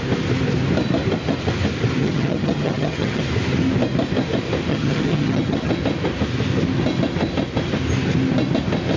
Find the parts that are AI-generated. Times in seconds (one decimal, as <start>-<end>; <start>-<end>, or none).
2.0-3.2; 4.7-5.7